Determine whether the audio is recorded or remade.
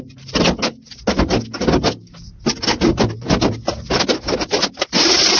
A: recorded